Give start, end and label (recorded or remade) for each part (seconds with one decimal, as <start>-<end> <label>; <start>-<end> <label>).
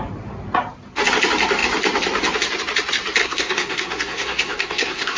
0.0-3.2 recorded; 3.2-5.2 remade